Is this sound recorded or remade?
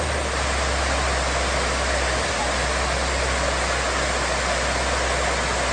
recorded